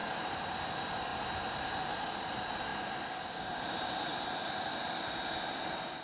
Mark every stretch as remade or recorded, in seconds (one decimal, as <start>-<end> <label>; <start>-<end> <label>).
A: 0.0-0.7 remade; 0.7-6.0 recorded